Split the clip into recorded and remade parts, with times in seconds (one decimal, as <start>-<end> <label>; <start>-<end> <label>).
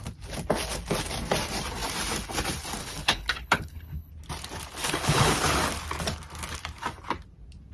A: 0.0-2.8 recorded; 2.8-4.1 remade; 4.1-4.8 recorded; 4.8-5.3 remade; 5.3-7.7 recorded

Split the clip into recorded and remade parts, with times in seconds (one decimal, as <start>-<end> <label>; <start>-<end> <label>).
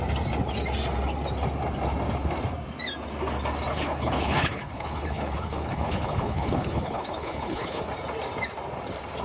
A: 0.0-3.7 recorded; 3.7-7.8 remade; 7.8-9.2 recorded